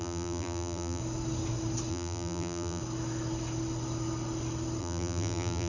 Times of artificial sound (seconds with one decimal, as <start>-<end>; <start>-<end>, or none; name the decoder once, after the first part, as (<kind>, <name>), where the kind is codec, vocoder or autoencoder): 0.0-1.0 (vocoder, BigVGAN v2); 1.9-2.8; 4.8-5.7